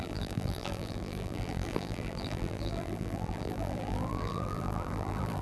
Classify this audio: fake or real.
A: fake